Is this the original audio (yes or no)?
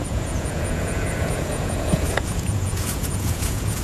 no